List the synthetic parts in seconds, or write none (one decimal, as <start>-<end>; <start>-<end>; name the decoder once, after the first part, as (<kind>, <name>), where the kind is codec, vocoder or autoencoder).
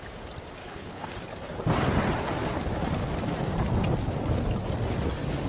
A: 0.6-1.1 (codec, HILCodec)